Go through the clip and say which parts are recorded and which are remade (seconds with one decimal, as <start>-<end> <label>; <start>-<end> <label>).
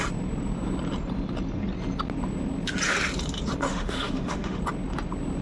0.0-3.7 recorded; 3.7-4.6 remade; 4.6-5.4 recorded